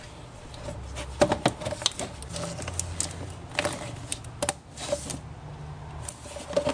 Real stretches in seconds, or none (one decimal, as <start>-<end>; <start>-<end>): 0.0-6.7